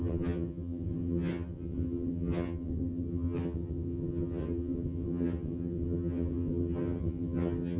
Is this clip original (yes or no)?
no